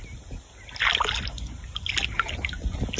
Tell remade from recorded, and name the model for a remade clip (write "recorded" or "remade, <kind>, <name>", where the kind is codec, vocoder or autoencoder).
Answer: recorded